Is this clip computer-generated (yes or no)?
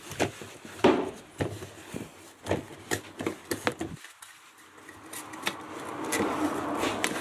no